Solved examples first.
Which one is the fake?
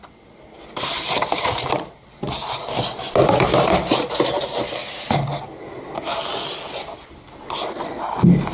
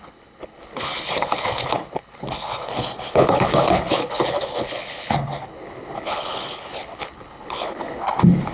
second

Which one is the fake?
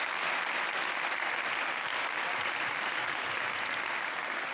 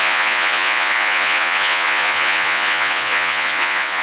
second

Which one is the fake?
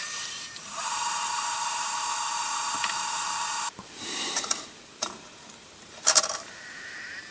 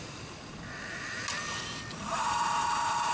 first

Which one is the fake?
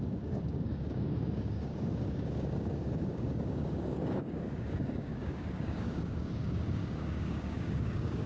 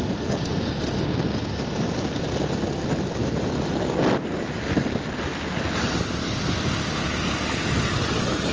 first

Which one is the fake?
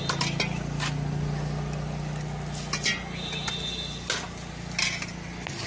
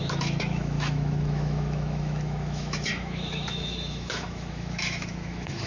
second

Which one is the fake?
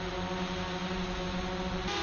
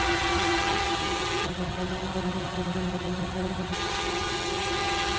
second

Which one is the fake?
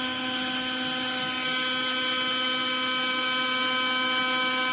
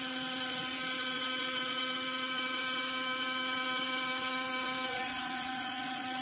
second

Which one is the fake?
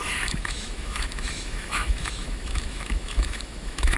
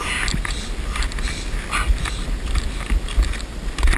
first